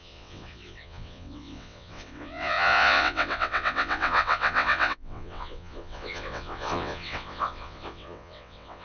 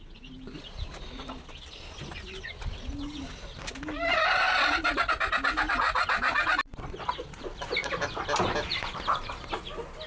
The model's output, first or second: first